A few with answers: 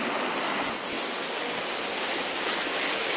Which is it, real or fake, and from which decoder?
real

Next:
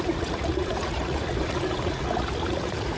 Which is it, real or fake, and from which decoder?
fake, vocoder, Vocos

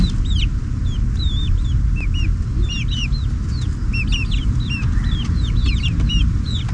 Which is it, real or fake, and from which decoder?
real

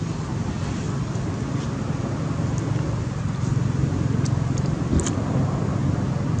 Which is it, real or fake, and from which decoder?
real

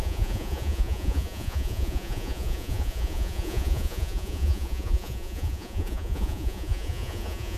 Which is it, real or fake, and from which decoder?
fake, vocoder, Vocos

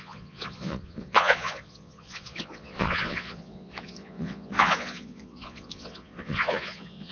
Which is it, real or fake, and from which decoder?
fake, vocoder, Vocos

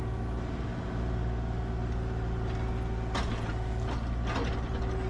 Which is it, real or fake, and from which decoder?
real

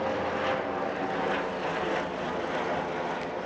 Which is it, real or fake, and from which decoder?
real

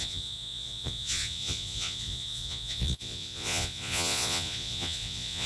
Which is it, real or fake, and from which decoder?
fake, vocoder, Vocos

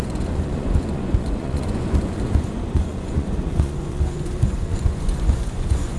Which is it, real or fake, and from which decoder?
fake, vocoder, Vocos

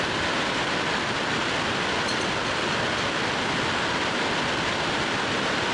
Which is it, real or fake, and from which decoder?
real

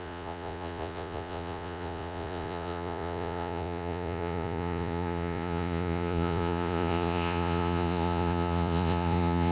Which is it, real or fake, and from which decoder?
fake, vocoder, Vocos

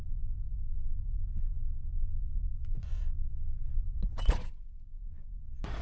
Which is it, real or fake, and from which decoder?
fake, vocoder, Vocos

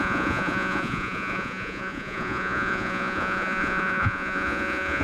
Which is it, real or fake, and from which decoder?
fake, vocoder, Vocos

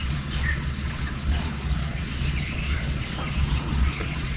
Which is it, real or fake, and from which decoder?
fake, vocoder, Vocos